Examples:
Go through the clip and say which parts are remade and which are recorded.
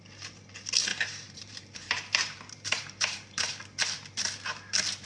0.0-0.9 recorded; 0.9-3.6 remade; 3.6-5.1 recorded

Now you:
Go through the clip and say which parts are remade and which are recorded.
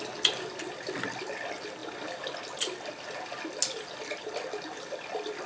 0.0-5.5 recorded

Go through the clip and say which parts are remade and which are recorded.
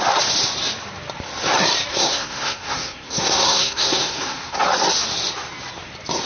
0.0-1.9 recorded; 1.9-4.6 remade; 4.6-6.3 recorded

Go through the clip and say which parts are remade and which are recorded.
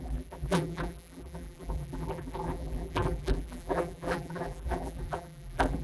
0.0-5.8 remade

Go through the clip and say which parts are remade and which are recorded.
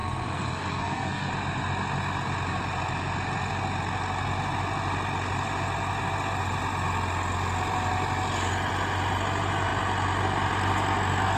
0.0-1.3 remade; 1.3-11.4 recorded